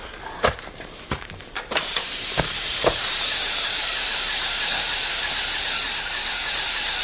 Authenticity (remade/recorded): remade